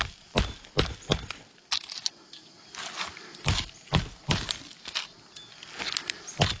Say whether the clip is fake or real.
real